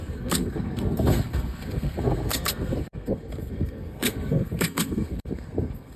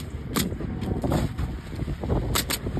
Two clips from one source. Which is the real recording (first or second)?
second